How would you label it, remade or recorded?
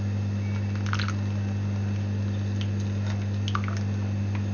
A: recorded